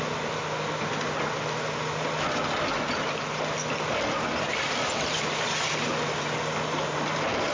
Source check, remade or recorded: recorded